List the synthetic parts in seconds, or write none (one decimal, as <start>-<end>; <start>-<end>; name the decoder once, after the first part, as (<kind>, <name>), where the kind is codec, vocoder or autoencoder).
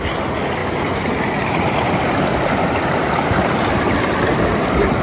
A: none